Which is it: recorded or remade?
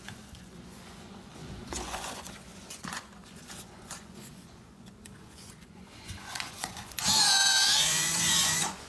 remade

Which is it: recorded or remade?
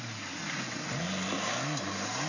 recorded